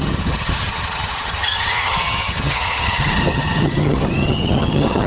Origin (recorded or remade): remade